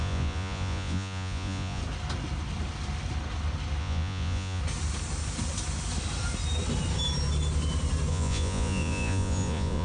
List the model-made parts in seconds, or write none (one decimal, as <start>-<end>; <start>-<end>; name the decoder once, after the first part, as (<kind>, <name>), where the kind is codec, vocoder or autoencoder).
0.0-1.8 (vocoder, Vocos); 3.8-4.6; 8.1-9.8